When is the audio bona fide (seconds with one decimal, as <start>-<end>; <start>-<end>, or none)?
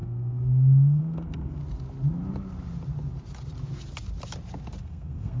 1.6-4.8